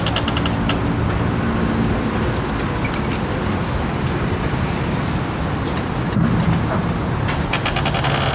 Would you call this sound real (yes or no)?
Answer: yes